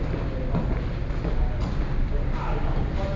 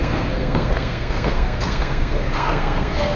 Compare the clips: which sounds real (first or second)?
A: first